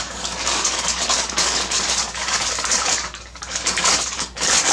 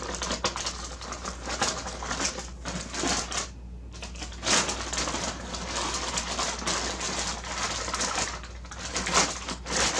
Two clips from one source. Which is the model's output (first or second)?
first